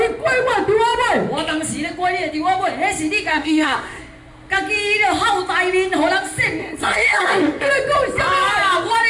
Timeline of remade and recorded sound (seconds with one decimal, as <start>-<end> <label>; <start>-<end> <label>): 0.0-3.3 recorded; 3.3-4.0 remade; 4.0-6.6 recorded; 6.6-7.7 remade; 7.7-9.1 recorded

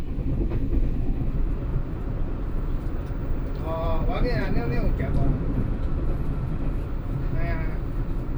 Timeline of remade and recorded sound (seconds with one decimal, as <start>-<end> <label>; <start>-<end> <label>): 0.0-1.7 recorded; 1.7-2.5 remade; 2.5-3.2 recorded; 3.2-5.7 remade; 5.7-8.4 recorded

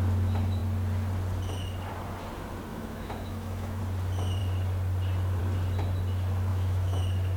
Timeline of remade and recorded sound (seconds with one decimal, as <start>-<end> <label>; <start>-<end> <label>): 0.0-2.7 recorded; 2.7-3.8 remade; 3.8-6.5 recorded; 6.5-7.0 remade; 7.0-7.4 recorded

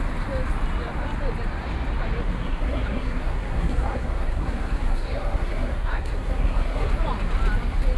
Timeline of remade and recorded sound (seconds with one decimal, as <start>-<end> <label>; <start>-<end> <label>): 0.0-2.2 recorded; 2.2-6.9 remade; 6.9-8.0 recorded